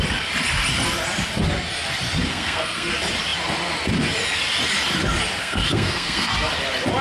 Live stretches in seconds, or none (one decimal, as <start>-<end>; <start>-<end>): 0.0-2.3; 2.9-5.4; 6.3-7.0